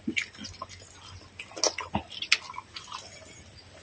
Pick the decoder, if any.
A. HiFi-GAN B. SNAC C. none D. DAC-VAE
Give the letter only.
C